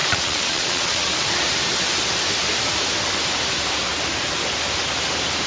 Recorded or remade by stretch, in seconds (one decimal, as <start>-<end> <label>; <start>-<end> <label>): 0.0-1.1 remade; 1.1-5.5 recorded